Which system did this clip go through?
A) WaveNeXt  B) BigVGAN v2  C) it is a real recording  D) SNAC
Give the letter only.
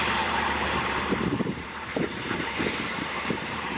B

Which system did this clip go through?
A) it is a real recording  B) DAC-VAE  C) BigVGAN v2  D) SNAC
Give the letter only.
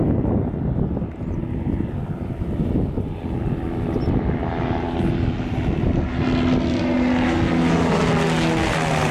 A